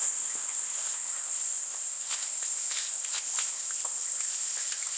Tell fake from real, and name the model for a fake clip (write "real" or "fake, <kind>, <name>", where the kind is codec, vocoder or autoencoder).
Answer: fake, codec, ZipCodec